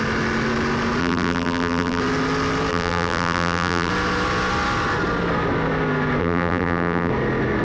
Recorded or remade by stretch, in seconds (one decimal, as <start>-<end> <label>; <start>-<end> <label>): 0.0-1.0 recorded; 1.0-2.0 remade; 2.0-2.7 recorded; 2.7-3.9 remade; 3.9-6.2 recorded; 6.2-7.1 remade; 7.1-7.6 recorded